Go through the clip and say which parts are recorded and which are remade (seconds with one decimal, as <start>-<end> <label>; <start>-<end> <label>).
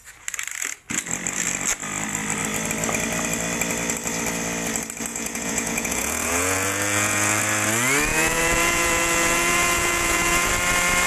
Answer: 0.0-5.1 recorded; 5.1-7.4 remade; 7.4-8.1 recorded; 8.1-10.5 remade; 10.5-11.1 recorded